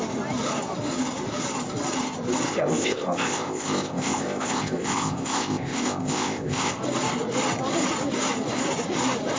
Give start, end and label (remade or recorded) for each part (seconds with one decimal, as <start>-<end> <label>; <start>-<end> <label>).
0.0-2.5 recorded; 2.5-6.8 remade; 6.8-9.4 recorded